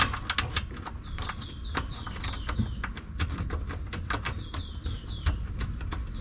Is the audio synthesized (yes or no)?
no